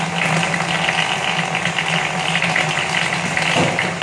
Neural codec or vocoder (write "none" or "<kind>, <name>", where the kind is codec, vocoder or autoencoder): none